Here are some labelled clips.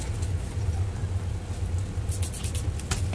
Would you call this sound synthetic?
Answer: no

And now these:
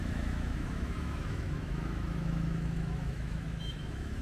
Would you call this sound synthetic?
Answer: yes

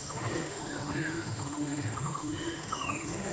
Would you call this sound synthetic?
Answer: yes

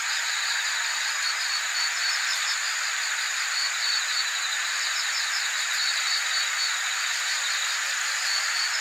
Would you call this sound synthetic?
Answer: no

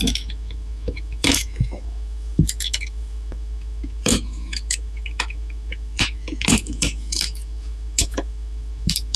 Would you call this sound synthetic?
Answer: yes